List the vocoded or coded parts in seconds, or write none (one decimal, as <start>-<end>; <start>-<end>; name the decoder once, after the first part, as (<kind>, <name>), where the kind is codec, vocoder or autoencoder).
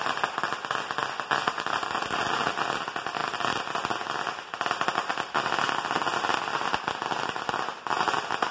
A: none